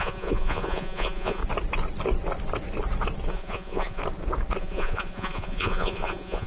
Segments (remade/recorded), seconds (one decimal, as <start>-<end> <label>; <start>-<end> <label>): 0.0-1.4 remade; 1.4-3.3 recorded; 3.3-4.0 remade; 4.0-4.6 recorded; 4.6-6.5 remade